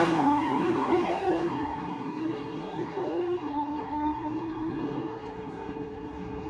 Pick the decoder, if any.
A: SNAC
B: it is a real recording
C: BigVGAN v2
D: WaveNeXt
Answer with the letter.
A